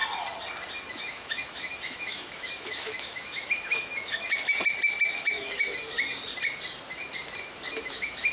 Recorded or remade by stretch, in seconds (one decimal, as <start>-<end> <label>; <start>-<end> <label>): 0.0-0.9 recorded; 0.9-4.5 remade; 4.5-5.2 recorded; 5.2-6.2 remade; 6.2-7.7 recorded; 7.7-8.3 remade